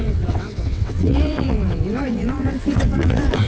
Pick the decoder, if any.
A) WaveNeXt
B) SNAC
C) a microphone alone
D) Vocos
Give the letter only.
A